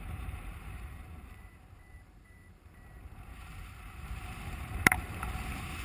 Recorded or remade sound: remade